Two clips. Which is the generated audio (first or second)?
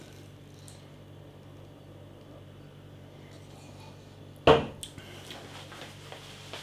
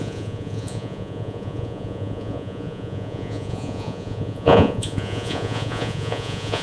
second